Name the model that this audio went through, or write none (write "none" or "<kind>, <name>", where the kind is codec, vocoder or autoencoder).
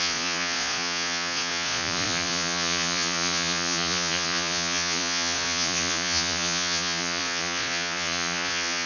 vocoder, Vocos